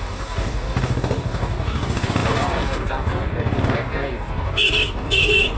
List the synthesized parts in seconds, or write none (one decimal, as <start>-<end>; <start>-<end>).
0.0-5.6